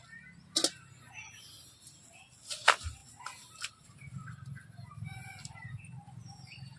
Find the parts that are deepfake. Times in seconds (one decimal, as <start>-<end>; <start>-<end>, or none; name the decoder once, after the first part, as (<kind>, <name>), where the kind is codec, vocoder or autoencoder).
2.4-3.0 (vocoder, BigVGAN v2); 3.7-4.5; 6.2-6.8